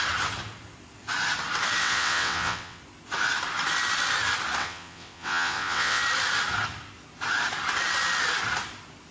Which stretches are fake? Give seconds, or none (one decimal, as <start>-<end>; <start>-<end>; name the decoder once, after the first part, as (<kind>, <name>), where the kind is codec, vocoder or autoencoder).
1.8-2.8 (vocoder, WaveNeXt); 4.6-6.0